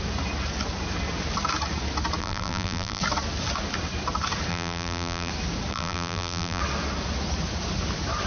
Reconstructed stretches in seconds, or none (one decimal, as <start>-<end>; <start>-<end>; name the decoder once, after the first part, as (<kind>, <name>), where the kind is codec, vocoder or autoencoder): 2.2-3.0 (vocoder, BigVGAN v2); 4.5-5.3; 5.7-6.6